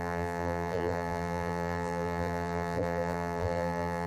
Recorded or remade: remade